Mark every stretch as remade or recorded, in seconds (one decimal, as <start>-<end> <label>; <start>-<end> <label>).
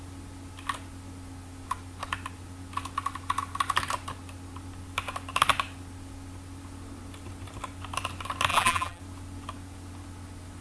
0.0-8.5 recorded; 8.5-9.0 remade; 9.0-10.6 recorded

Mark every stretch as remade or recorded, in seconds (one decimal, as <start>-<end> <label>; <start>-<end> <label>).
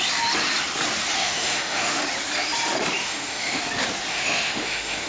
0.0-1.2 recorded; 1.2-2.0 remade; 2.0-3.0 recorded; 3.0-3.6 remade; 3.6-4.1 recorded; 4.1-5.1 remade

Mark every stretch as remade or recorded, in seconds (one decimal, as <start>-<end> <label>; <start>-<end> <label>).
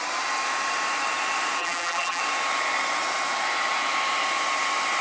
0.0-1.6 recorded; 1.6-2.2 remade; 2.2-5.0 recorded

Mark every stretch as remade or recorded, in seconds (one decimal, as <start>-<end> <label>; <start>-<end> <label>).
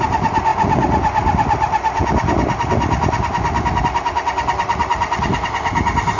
0.0-6.2 recorded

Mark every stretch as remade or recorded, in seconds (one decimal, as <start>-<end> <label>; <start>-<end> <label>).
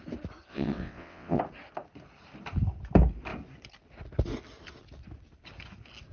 0.0-0.5 recorded; 0.5-1.4 remade; 1.4-6.1 recorded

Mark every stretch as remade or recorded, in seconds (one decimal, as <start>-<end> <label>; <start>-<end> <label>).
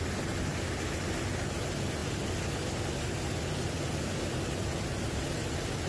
0.0-5.9 recorded